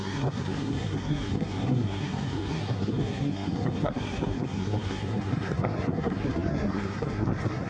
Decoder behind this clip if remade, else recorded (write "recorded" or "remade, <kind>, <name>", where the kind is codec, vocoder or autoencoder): remade, codec, SNAC